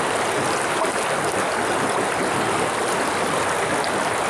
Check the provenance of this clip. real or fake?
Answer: real